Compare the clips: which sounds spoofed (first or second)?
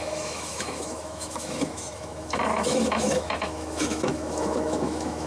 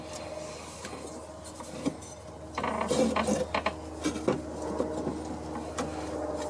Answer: first